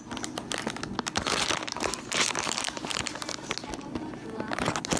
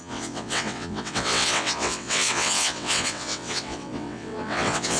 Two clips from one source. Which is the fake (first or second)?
second